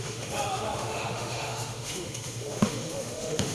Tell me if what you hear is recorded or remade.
remade